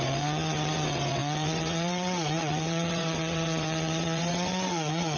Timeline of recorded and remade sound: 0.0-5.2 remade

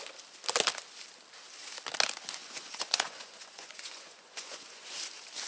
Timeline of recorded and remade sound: 0.0-2.4 recorded; 2.4-5.0 remade; 5.0-5.5 recorded

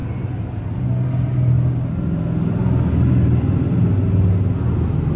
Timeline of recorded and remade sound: 0.0-5.2 recorded

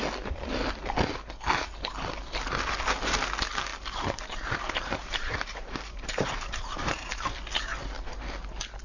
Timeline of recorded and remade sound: 0.0-3.7 recorded; 3.7-7.1 remade; 7.1-8.8 recorded

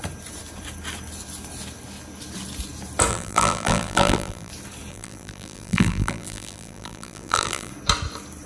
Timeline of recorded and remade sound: 0.0-3.1 recorded; 3.1-4.5 remade; 4.5-4.9 recorded; 4.9-7.7 remade; 7.7-8.5 recorded

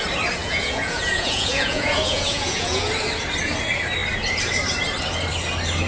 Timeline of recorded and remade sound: 0.0-0.4 recorded; 0.4-2.9 remade; 2.9-5.9 recorded

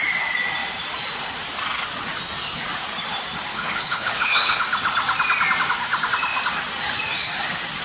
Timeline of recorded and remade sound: 0.0-3.5 recorded; 3.5-4.6 remade; 4.6-7.8 recorded